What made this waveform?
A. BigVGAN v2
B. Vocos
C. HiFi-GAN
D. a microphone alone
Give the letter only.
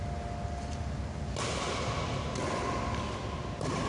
D